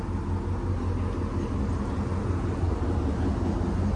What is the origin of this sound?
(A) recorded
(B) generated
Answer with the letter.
A